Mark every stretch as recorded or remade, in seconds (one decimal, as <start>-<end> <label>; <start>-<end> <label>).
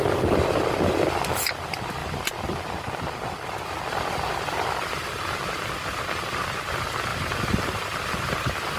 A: 0.0-2.0 recorded; 2.0-2.6 remade; 2.6-7.1 recorded; 7.1-8.8 remade